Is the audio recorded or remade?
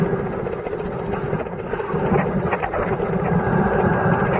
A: recorded